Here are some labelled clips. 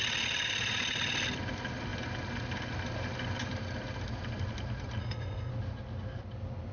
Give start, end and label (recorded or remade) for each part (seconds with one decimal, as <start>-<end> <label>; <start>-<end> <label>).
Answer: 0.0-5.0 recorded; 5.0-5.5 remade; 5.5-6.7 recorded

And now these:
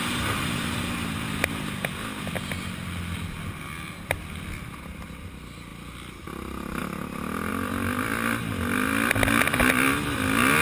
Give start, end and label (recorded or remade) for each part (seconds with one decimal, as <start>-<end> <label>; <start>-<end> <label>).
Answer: 0.0-0.8 remade; 0.8-10.6 recorded

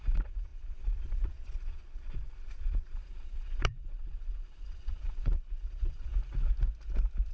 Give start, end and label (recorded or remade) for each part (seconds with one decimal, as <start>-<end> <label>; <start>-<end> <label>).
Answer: 0.0-6.1 remade; 6.1-7.3 recorded

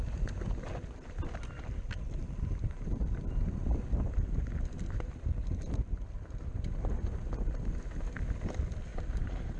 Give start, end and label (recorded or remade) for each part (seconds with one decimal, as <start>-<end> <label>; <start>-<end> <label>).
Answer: 0.0-2.2 recorded; 2.2-3.0 remade; 3.0-8.9 recorded; 8.9-9.6 remade

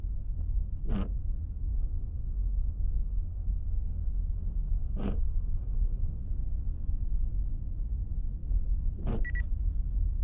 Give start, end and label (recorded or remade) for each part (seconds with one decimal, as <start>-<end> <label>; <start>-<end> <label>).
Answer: 0.0-1.7 recorded; 1.7-6.2 remade; 6.2-10.2 recorded

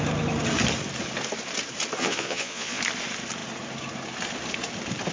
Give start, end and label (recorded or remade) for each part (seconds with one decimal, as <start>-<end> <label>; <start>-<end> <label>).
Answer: 0.0-2.0 recorded; 2.0-2.8 remade; 2.8-5.1 recorded

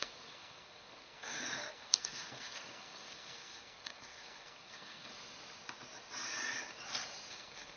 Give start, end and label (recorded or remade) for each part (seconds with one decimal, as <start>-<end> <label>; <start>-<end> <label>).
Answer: 0.0-5.1 remade; 5.1-7.3 recorded; 7.3-7.8 remade

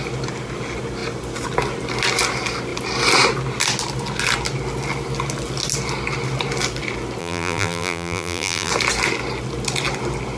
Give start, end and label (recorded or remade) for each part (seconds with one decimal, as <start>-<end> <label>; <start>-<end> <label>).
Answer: 0.0-7.2 recorded; 7.2-8.7 remade; 8.7-10.4 recorded